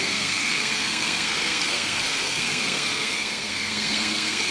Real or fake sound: fake